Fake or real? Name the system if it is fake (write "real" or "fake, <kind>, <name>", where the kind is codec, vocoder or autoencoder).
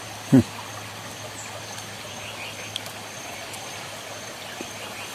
real